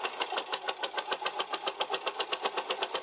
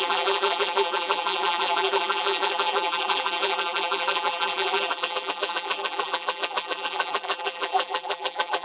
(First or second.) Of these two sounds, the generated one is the second